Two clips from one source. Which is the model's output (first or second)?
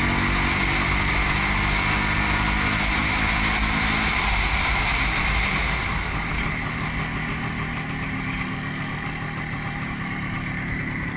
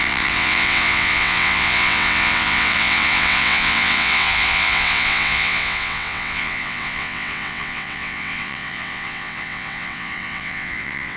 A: second